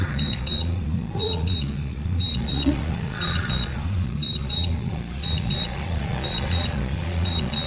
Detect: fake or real fake